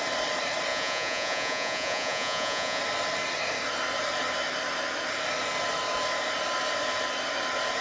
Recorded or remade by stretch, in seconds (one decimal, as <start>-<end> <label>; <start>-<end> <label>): 0.0-0.7 recorded; 0.7-2.8 remade; 2.8-7.8 recorded